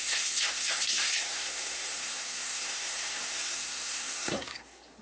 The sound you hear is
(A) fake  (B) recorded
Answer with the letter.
A